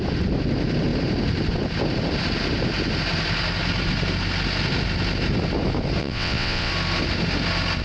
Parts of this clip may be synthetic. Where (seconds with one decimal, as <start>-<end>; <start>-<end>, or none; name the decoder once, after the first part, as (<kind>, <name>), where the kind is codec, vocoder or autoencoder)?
6.0-6.7 (vocoder, WaveNeXt)

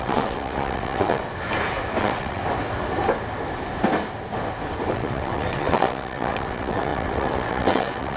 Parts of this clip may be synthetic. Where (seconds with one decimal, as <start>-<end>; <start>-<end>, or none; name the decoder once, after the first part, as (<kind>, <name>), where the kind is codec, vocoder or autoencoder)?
0.0-1.2 (vocoder, WaveNeXt); 2.0-2.4; 4.9-8.2